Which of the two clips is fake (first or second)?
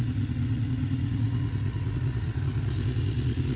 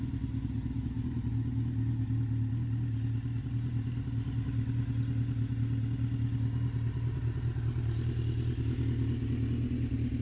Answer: first